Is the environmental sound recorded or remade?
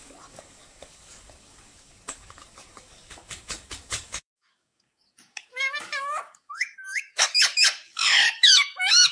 remade